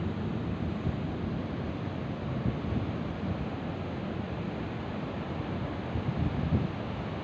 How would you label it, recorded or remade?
recorded